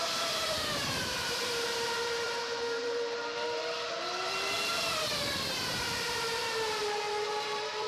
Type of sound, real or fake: fake